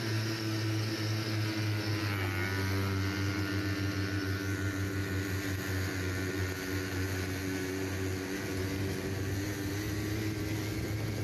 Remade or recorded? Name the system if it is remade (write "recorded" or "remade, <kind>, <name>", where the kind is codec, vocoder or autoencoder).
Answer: recorded